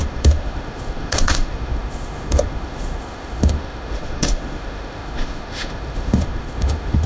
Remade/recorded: remade